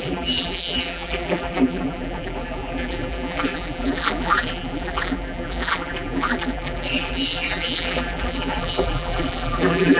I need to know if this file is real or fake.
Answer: fake